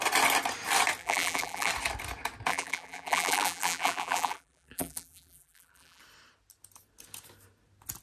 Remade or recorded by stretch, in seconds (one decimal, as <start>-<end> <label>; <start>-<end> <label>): 0.0-1.0 recorded; 1.0-1.7 remade; 1.7-2.5 recorded; 2.5-6.0 remade; 6.0-8.0 recorded